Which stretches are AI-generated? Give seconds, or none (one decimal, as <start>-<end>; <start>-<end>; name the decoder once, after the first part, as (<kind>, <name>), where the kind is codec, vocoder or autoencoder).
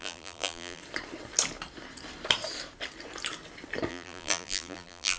0.0-0.8 (vocoder, BigVGAN v2); 3.9-5.2